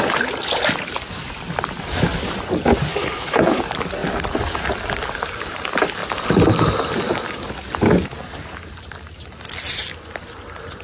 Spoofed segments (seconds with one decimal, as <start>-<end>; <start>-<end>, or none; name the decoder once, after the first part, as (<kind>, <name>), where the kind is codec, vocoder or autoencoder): 2.9-3.6 (codec, HILCodec)